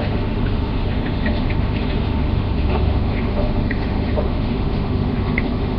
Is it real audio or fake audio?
fake